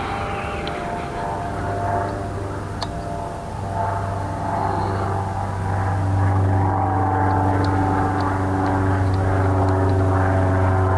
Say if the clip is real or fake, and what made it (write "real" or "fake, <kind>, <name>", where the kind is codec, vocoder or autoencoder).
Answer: real